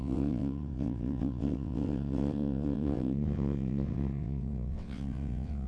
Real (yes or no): no